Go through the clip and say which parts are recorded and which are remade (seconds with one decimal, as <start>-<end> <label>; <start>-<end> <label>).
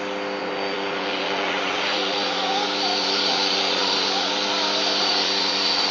0.0-0.4 recorded; 0.4-2.5 remade; 2.5-3.0 recorded; 3.0-4.3 remade; 4.3-5.0 recorded; 5.0-5.9 remade